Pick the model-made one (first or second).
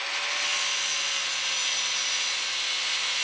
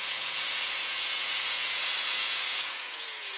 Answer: second